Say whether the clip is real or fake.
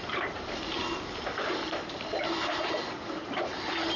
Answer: real